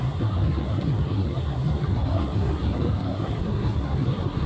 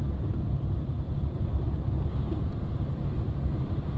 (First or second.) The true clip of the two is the second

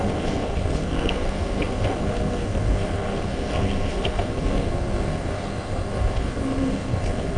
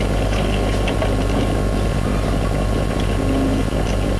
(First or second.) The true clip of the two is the second